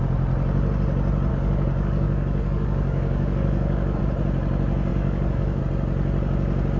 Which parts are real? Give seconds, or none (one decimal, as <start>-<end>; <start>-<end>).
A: 0.0-1.3; 4.0-4.9; 5.6-6.8